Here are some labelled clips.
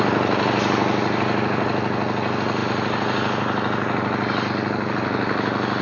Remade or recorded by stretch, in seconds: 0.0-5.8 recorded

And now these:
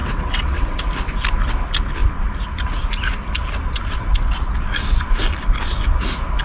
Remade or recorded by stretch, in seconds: 0.0-0.8 remade; 0.8-6.4 recorded

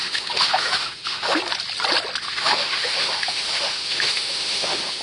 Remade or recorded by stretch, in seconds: 0.0-1.4 remade; 1.4-2.2 recorded; 2.2-5.0 remade

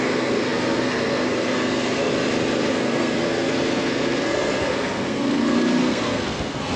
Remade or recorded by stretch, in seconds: 0.0-2.1 remade; 2.1-2.7 recorded; 2.7-6.8 remade

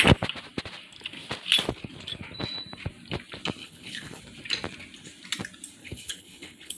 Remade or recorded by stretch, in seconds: 0.0-3.6 recorded; 3.6-4.2 remade; 4.2-5.8 recorded; 5.8-6.8 remade